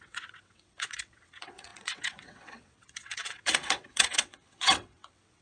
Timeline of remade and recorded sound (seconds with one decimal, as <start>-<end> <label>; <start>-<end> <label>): 0.0-5.4 remade